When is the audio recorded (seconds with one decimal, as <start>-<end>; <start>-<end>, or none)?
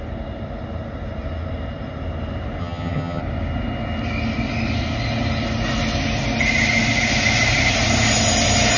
0.0-2.6; 3.2-8.8